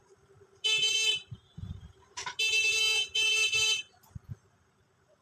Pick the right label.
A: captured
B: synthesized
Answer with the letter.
B